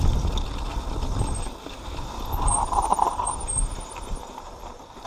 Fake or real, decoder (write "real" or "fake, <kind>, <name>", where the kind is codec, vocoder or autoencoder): real